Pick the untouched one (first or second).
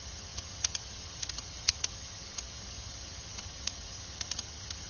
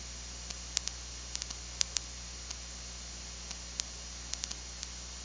second